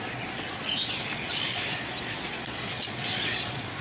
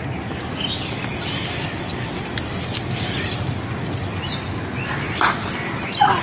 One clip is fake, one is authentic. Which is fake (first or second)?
first